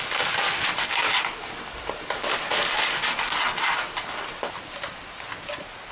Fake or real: real